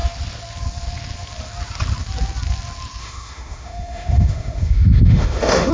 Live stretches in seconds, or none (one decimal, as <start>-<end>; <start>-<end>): 0.0-3.0